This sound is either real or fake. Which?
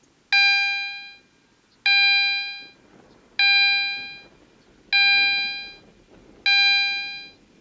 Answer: real